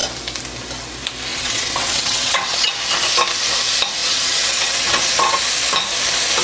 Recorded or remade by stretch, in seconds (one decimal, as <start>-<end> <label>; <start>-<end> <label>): 0.0-1.3 recorded; 1.3-2.7 remade; 2.7-4.0 recorded; 4.0-5.4 remade; 5.4-6.4 recorded